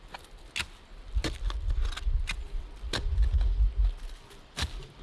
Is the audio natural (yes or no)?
yes